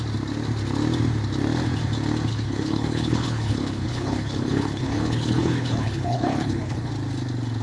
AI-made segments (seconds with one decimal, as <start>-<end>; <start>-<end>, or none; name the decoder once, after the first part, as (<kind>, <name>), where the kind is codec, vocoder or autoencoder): 2.3-6.9 (codec, HILCodec)